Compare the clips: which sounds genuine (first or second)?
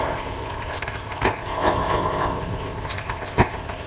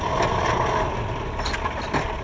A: second